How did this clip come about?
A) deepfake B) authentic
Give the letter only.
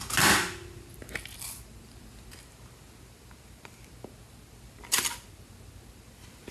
B